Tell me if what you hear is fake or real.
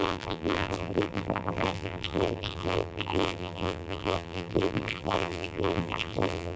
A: fake